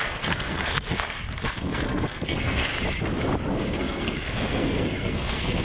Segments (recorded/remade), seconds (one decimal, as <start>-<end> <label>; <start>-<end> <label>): 0.0-2.7 remade; 2.7-3.4 recorded; 3.4-5.6 remade